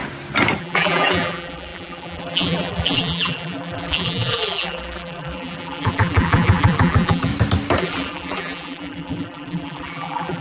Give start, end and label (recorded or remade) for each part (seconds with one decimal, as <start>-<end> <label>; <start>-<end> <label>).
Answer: 0.0-0.6 recorded; 0.6-7.3 remade; 7.3-7.8 recorded; 7.8-10.4 remade